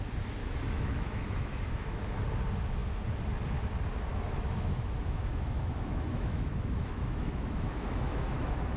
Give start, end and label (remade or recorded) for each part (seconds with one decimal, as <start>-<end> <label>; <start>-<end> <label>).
0.0-0.4 recorded; 0.4-2.2 remade; 2.2-4.1 recorded; 4.1-8.8 remade